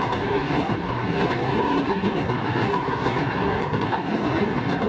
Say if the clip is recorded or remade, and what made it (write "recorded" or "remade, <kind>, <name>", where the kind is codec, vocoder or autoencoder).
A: remade, codec, SNAC